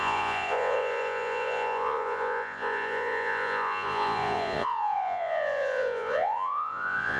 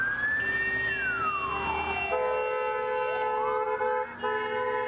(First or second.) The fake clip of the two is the first